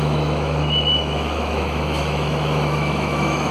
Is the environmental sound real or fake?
fake